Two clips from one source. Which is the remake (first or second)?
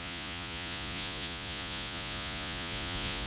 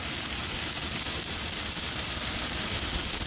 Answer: first